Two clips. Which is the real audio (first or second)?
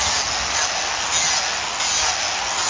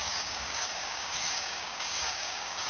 first